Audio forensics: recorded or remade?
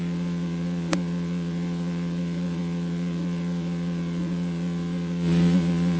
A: remade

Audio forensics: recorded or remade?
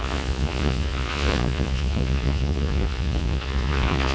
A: remade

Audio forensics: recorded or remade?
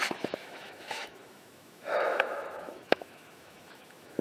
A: remade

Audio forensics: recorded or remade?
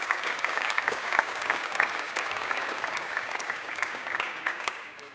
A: remade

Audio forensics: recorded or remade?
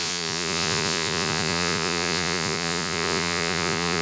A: remade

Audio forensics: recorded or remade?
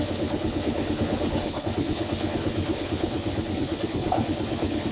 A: remade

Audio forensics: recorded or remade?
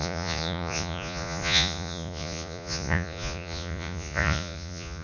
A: remade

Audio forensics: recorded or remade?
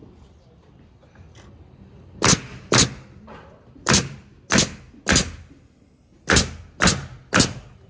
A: recorded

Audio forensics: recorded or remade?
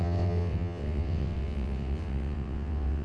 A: remade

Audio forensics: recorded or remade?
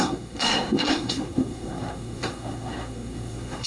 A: remade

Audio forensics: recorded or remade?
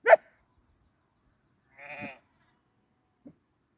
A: recorded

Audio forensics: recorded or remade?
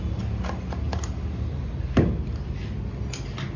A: recorded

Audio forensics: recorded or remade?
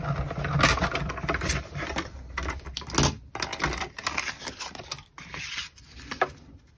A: recorded